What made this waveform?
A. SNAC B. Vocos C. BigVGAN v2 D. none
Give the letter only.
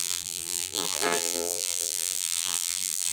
C